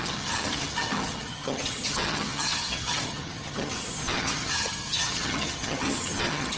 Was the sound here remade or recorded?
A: remade